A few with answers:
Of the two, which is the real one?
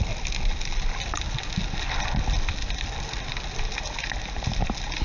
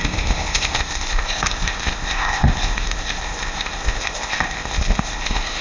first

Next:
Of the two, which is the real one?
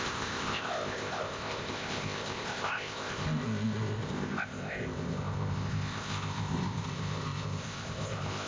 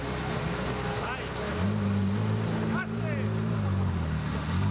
second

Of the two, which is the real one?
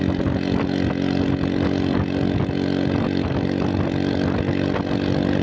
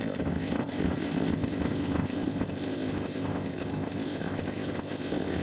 first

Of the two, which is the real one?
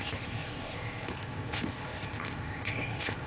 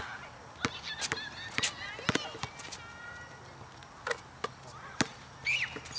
second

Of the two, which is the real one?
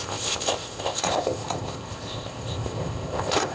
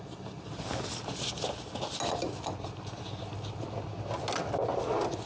second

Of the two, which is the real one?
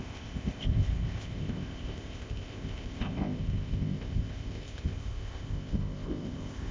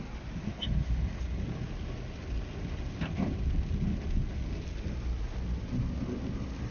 second